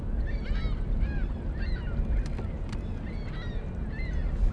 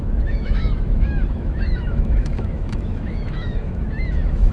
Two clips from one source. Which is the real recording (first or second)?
first